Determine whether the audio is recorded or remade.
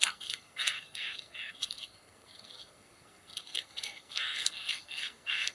remade